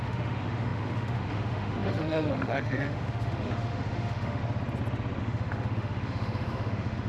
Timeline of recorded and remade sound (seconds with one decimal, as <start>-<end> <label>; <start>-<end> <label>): 0.0-4.4 remade; 4.4-5.2 recorded; 5.2-7.1 remade